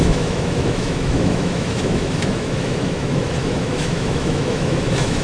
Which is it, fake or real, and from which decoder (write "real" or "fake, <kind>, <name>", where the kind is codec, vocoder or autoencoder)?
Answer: fake, autoencoder, DAC-VAE